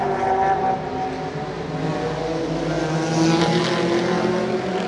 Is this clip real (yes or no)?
yes